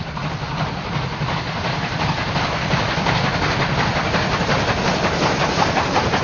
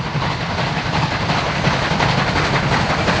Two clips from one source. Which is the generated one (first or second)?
second